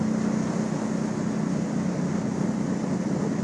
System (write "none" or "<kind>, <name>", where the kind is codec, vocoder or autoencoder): none